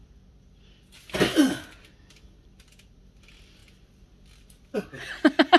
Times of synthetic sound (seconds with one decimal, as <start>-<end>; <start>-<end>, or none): none